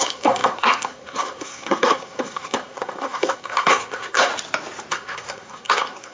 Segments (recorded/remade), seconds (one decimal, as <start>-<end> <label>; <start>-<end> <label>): 0.0-4.3 remade; 4.3-4.9 recorded; 4.9-6.1 remade